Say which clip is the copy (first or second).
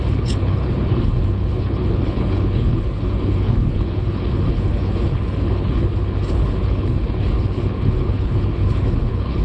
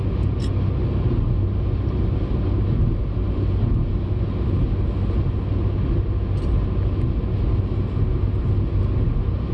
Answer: first